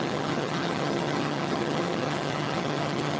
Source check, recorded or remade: remade